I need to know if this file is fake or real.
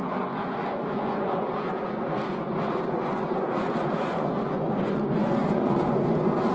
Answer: fake